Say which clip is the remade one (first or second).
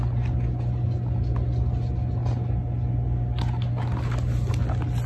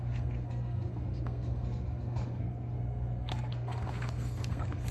second